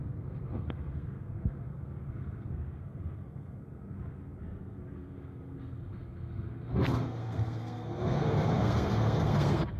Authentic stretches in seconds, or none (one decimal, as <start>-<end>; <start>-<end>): none